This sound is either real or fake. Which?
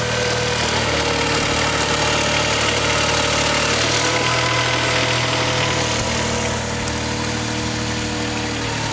real